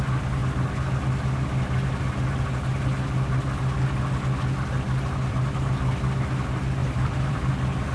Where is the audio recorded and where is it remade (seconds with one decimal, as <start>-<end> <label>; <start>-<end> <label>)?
0.0-6.8 recorded; 6.8-7.5 remade; 7.5-7.9 recorded